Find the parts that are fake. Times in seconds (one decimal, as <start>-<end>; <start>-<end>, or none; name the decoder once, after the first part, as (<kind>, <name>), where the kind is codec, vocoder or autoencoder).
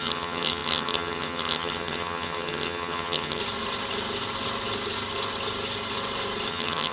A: 0.0-3.4 (vocoder, HiFi-GAN); 6.5-6.9